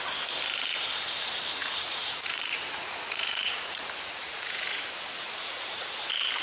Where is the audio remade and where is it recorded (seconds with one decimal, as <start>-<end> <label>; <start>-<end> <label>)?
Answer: 0.0-1.6 recorded; 1.6-4.8 remade; 4.8-5.4 recorded; 5.4-6.0 remade; 6.0-6.4 recorded